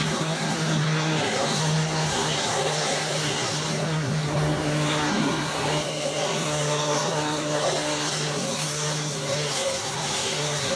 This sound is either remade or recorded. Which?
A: remade